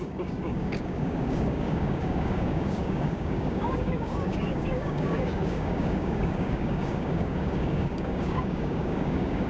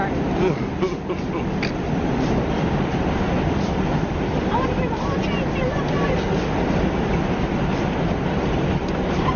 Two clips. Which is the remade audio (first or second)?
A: first